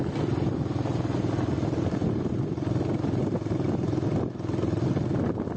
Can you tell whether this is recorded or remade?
recorded